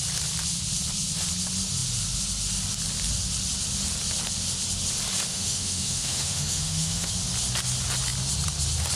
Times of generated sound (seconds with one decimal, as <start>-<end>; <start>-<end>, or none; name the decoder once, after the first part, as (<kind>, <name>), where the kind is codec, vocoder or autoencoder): 5.3-7.1 (autoencoder, DAC-VAE)